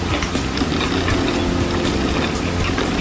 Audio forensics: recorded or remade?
recorded